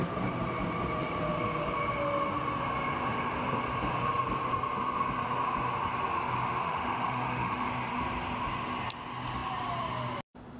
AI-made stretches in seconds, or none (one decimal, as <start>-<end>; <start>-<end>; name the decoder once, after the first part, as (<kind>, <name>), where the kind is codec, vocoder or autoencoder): 6.6-7.7 (autoencoder, DAC-VAE)

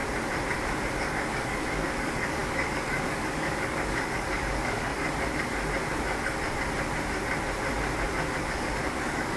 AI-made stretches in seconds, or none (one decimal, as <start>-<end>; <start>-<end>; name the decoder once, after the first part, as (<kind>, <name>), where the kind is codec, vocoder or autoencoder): 1.0-4.9 (codec, DAC); 8.4-9.4

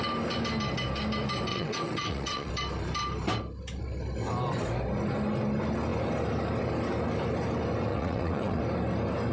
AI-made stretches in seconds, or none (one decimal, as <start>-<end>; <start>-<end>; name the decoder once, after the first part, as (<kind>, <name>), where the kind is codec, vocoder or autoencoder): 1.5-2.5 (vocoder, WaveNeXt); 7.9-8.6

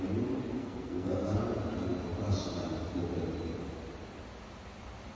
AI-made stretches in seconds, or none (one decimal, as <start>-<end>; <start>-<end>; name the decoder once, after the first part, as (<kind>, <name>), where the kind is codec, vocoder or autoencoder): 0.6-1.4 (codec, SNAC)

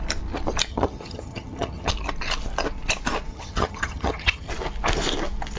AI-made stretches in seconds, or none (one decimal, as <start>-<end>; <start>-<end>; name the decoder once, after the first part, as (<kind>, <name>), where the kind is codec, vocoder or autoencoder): 0.7-1.9 (vocoder, HiFi-GAN); 3.3-4.5

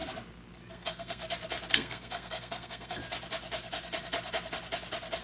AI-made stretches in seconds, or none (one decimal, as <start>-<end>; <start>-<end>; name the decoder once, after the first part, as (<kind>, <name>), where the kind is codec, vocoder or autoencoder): 0.7-1.2 (codec, SNAC); 1.7-3.0

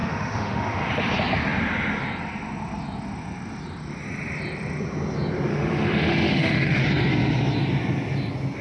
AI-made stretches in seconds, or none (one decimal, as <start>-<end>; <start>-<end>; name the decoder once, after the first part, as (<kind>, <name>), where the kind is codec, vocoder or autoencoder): 0.0-0.9 (autoencoder, DAC-VAE); 5.5-6.8